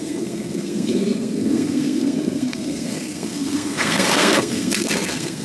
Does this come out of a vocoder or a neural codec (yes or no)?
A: yes